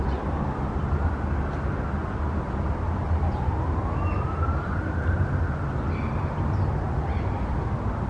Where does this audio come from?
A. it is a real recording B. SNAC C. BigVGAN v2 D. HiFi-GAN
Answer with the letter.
A